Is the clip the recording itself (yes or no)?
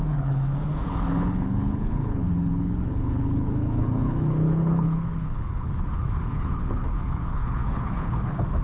no